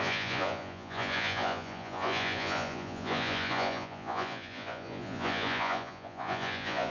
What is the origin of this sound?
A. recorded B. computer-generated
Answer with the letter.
B